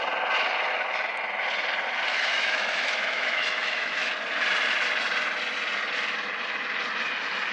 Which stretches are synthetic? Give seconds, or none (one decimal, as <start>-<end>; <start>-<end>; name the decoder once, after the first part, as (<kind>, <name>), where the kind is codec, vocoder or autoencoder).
2.1-4.1 (autoencoder, DAC-VAE)